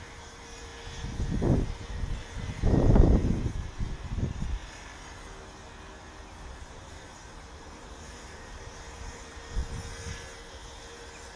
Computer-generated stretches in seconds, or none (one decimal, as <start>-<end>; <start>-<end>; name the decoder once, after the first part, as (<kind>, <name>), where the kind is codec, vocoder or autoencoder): 0.0-0.7 (vocoder, BigVGAN v2); 1.9-4.6; 6.6-9.6